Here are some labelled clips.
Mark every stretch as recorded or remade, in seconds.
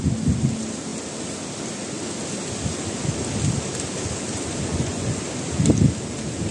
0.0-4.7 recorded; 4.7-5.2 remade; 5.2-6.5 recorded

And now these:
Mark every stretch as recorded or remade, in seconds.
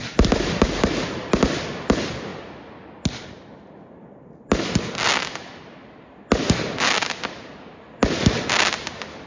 0.0-9.3 recorded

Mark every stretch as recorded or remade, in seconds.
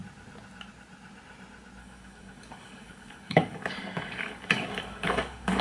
0.0-1.8 recorded; 1.8-5.6 remade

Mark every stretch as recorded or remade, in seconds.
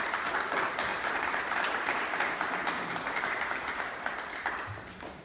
0.0-0.9 recorded; 0.9-4.0 remade; 4.0-5.2 recorded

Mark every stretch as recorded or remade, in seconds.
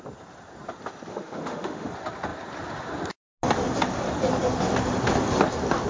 0.0-1.1 recorded; 1.1-1.9 remade; 1.9-5.9 recorded